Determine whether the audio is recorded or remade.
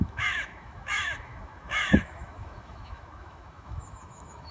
remade